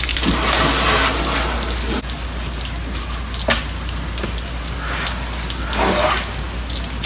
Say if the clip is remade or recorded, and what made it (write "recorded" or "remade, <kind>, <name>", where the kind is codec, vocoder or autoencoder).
recorded